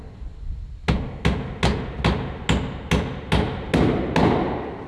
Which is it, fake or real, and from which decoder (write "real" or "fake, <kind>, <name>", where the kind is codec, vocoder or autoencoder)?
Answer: real